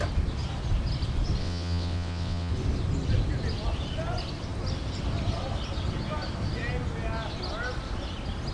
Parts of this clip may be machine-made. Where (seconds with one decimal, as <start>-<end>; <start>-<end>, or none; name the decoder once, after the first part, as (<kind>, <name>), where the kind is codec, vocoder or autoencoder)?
1.4-2.5 (vocoder, WaveNeXt)